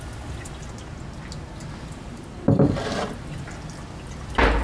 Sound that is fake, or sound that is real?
real